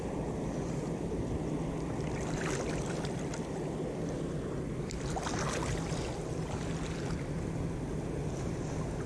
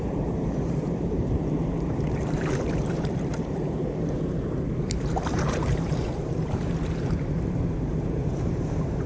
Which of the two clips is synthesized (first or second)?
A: second